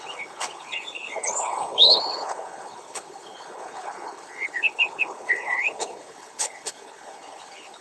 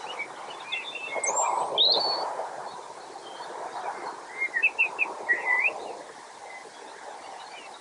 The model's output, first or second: first